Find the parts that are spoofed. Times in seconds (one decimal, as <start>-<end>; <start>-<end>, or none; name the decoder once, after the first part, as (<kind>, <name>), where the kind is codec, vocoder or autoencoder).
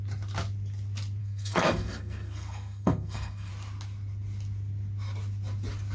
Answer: 1.2-3.5 (codec, SNAC)